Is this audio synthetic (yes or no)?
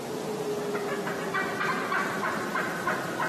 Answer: no